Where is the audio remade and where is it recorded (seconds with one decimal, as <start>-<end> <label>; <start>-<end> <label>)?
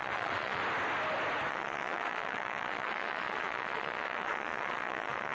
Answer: 0.0-0.6 remade; 0.6-1.5 recorded; 1.5-5.3 remade